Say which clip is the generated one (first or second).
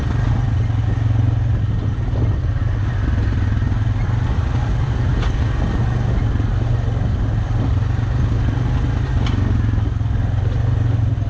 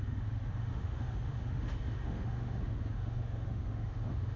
second